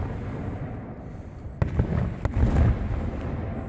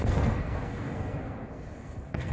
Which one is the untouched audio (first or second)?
first